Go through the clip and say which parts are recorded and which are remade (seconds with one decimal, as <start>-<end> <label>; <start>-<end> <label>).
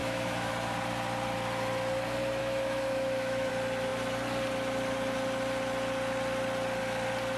0.0-0.5 remade; 0.5-2.4 recorded; 2.4-3.5 remade; 3.5-7.4 recorded